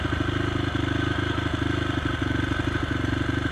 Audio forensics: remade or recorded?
recorded